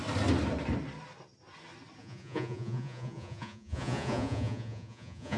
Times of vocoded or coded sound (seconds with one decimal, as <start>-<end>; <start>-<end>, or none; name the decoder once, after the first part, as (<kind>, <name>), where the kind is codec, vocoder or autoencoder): 2.0-5.4 (vocoder, Vocos)